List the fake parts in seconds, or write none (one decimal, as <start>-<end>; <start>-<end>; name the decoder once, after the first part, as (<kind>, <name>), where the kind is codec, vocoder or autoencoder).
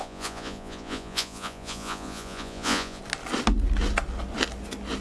0.0-3.0 (vocoder, Vocos)